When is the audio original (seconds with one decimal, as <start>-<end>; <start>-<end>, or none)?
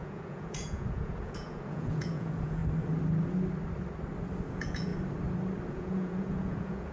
2.6-4.5; 4.9-5.7